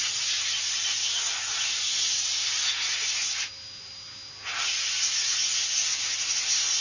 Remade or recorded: recorded